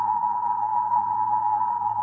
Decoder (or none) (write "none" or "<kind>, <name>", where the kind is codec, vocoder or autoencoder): codec, SNAC